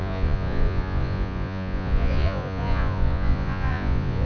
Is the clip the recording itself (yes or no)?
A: no